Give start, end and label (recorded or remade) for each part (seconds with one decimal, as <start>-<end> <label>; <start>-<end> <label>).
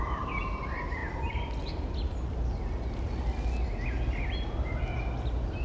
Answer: 0.0-5.6 recorded